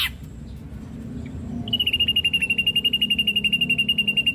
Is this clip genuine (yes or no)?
yes